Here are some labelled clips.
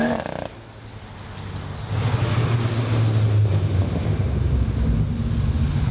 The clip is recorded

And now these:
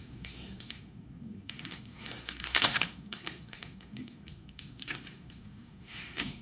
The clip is remade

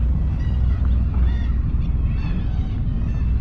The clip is recorded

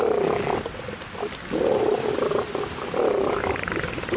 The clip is recorded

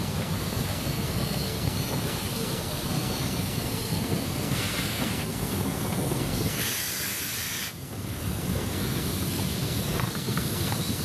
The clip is remade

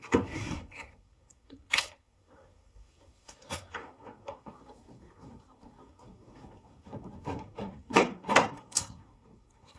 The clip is remade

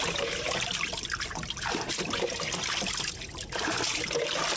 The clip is recorded